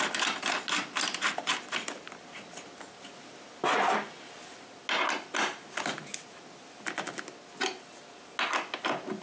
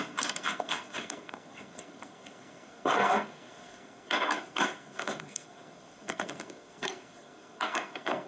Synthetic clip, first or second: second